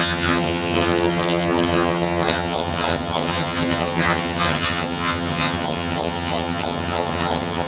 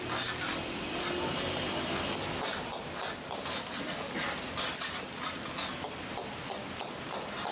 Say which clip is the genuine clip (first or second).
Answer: second